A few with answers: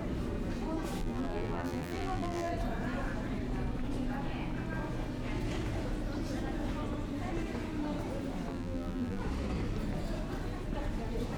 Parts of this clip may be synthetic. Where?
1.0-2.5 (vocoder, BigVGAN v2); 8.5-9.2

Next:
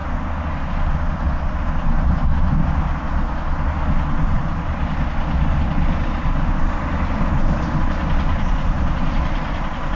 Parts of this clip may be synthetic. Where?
4.1-4.7 (vocoder, BigVGAN v2); 7.2-9.9

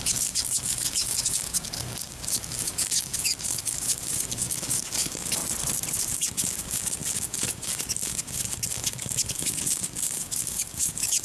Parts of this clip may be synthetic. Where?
0.0-5.4 (codec, DAC); 6.0-11.2

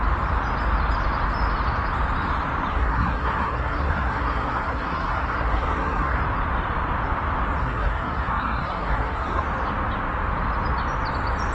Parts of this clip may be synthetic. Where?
2.7-6.2 (codec, SNAC); 7.6-9.4

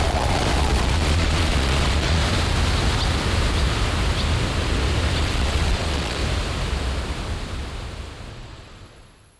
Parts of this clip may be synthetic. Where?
0.0-2.2 (vocoder, Vocos); 5.2-6.2; 8.3-9.4

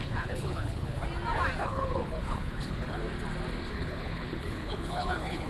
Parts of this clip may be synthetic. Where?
0.0-1.0 (codec, HILCodec); 1.6-3.0; 3.7-5.5

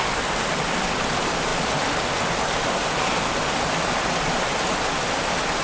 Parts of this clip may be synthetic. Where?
none

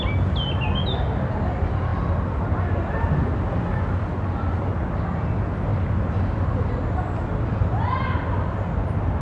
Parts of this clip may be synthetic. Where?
none